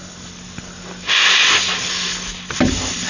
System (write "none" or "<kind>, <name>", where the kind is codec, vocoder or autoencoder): none